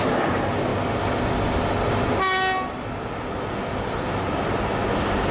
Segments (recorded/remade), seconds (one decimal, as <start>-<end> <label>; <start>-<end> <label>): 0.0-5.3 recorded